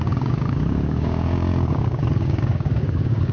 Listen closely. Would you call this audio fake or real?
fake